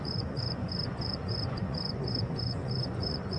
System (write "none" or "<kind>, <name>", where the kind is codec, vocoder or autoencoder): vocoder, Vocos